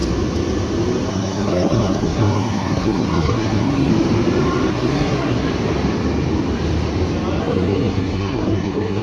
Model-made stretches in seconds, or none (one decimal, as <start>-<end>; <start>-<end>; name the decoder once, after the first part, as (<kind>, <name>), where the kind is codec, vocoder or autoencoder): 1.1-3.9 (codec, SNAC); 4.7-5.5; 7.4-9.0